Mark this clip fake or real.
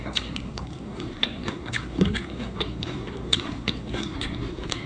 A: fake